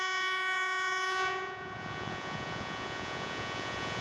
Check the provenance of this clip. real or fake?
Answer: fake